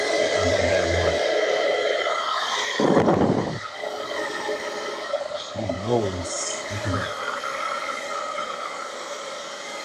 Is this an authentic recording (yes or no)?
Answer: no